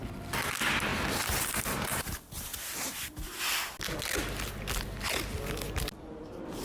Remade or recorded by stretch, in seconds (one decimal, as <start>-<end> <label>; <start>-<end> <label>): 0.0-6.6 recorded